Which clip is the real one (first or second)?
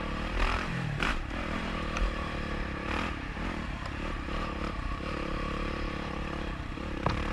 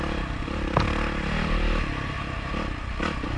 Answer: second